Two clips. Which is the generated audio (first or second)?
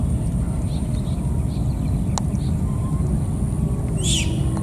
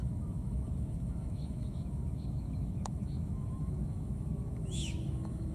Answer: second